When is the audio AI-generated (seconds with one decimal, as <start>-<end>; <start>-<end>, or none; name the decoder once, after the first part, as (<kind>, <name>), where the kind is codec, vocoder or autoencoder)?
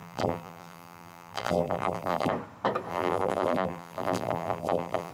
0.0-2.3 (vocoder, BigVGAN v2); 2.9-5.1